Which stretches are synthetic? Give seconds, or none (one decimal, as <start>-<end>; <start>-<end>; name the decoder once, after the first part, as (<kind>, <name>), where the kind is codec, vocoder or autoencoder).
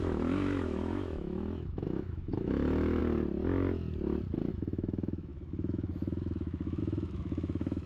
0.0-3.0 (autoencoder, DAC-VAE); 4.5-7.9